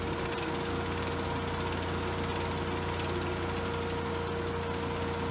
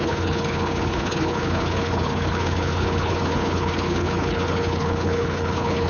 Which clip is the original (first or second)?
first